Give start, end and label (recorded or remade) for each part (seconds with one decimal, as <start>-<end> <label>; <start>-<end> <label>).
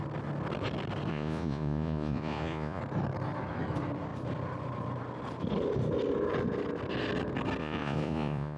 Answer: 0.0-1.1 recorded; 1.1-2.8 remade; 2.8-7.6 recorded; 7.6-8.6 remade